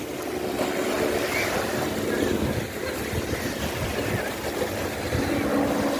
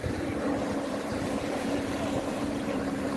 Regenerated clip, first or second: second